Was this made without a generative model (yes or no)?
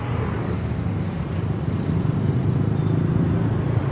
yes